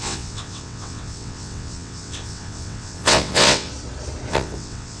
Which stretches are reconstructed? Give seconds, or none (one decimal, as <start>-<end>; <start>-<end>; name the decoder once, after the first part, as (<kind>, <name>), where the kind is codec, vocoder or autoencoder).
0.0-3.7 (vocoder, WaveNeXt); 4.3-5.0